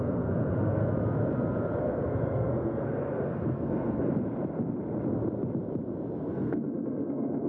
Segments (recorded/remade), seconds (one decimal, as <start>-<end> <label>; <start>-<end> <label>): 0.0-0.8 remade; 0.8-1.8 recorded; 1.8-4.1 remade; 4.1-6.2 recorded; 6.2-7.5 remade